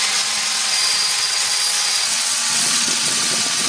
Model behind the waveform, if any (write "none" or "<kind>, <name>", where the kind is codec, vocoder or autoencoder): vocoder, WaveNeXt